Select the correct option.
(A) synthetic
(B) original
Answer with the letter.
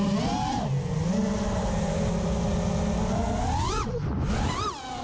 B